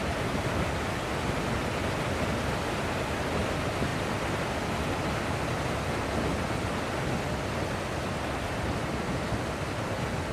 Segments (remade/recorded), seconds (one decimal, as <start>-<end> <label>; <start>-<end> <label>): 0.0-10.3 recorded